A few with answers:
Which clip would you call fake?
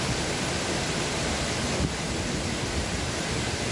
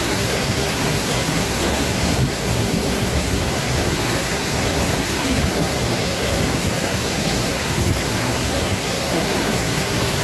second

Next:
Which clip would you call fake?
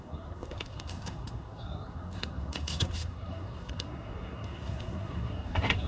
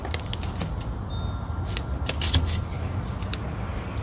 first